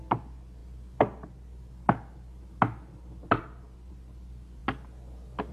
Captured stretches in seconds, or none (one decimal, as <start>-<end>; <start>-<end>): 0.0-5.5